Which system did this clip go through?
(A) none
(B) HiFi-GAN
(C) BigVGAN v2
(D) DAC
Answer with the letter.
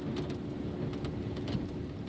A